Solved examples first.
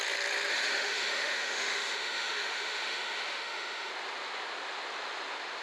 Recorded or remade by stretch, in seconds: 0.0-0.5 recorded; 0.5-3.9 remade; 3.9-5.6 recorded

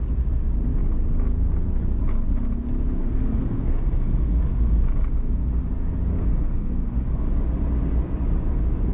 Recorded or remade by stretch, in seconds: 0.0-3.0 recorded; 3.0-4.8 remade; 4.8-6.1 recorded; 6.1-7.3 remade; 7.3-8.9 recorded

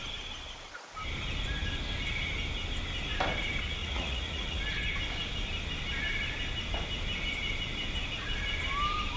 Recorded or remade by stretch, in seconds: 0.0-3.8 recorded; 3.8-4.6 remade; 4.6-9.2 recorded

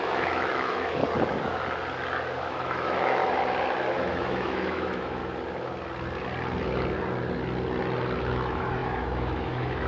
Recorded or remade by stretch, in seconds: 0.0-1.0 remade; 1.0-2.4 recorded; 2.4-3.2 remade; 3.2-3.9 recorded; 3.9-5.2 remade; 5.2-8.2 recorded; 8.2-9.9 remade

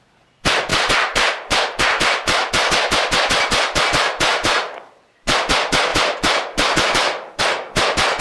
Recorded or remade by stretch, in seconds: 0.0-0.7 recorded; 0.7-2.5 remade; 2.5-4.3 recorded; 4.3-5.4 remade; 5.4-5.9 recorded; 5.9-7.4 remade; 7.4-8.2 recorded